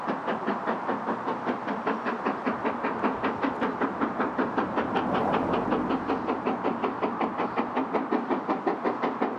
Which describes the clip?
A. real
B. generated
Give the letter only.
A